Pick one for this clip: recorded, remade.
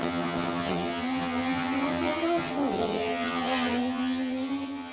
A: remade